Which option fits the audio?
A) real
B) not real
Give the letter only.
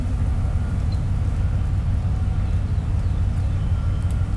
A